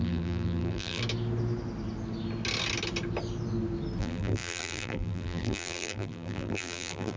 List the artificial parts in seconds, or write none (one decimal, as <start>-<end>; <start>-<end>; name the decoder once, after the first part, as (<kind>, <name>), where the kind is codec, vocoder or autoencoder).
0.0-1.0 (vocoder, BigVGAN v2); 4.0-7.2